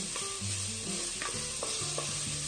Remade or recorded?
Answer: recorded